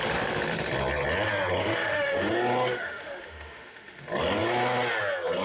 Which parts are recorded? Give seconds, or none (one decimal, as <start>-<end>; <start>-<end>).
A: 0.0-1.6; 2.3-2.7; 4.0-5.4